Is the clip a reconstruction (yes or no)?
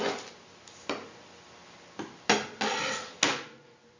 no